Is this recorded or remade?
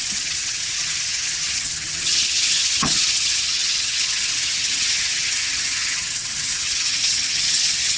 remade